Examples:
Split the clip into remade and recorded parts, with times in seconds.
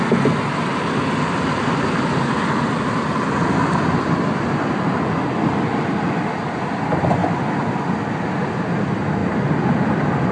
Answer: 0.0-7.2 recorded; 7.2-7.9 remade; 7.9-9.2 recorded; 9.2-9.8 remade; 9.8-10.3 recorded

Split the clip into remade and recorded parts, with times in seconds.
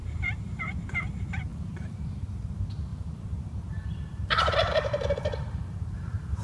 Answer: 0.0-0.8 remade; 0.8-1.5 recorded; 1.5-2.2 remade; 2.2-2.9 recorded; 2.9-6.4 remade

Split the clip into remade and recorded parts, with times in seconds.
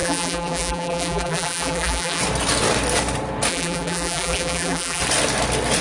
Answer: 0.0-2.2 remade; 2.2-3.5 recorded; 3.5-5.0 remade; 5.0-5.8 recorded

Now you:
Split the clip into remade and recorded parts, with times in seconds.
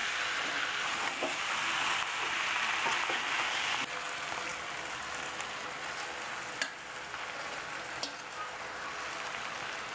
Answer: 0.0-9.9 recorded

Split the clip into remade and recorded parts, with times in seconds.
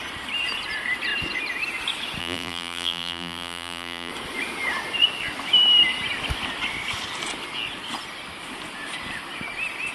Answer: 0.0-2.2 recorded; 2.2-4.1 remade; 4.1-9.9 recorded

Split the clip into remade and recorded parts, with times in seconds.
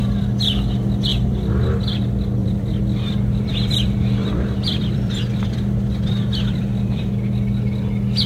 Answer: 0.0-1.1 recorded; 1.1-1.8 remade; 1.8-2.4 recorded; 2.4-7.1 remade; 7.1-8.3 recorded